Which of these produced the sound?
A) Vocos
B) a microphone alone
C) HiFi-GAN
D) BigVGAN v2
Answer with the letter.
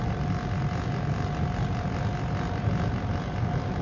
B